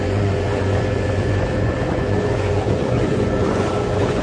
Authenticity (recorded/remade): remade